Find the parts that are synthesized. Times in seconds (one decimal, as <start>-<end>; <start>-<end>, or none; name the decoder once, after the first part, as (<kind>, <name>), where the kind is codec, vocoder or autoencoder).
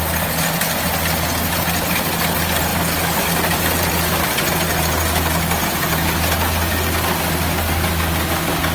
2.7-3.9 (vocoder, BigVGAN v2)